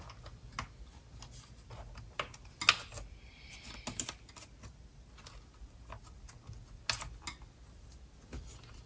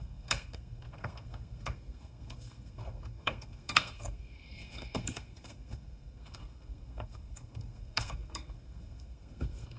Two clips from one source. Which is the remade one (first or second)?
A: second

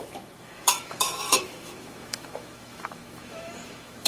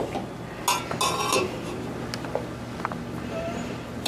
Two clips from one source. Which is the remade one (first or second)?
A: first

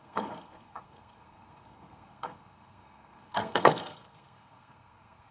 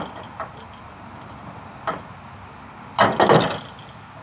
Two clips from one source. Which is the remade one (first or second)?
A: first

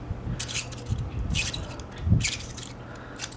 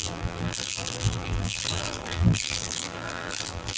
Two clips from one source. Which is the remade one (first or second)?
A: second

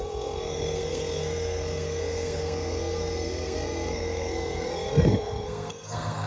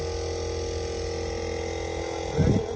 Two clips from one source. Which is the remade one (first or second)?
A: first